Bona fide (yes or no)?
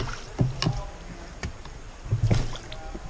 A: yes